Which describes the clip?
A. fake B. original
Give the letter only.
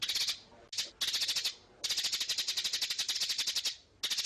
B